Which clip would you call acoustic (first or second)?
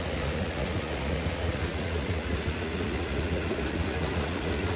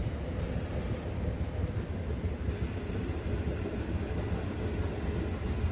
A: second